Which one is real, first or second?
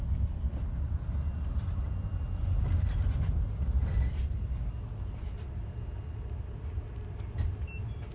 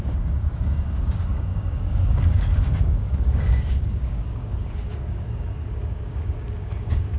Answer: first